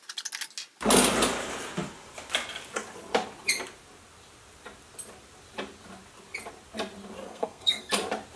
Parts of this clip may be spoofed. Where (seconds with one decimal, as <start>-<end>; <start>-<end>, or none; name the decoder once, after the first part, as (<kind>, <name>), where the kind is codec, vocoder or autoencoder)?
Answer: 7.2-7.9 (codec, SNAC)